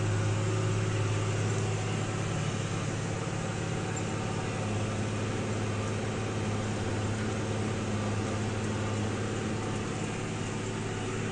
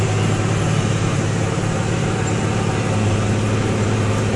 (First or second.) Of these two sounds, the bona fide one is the first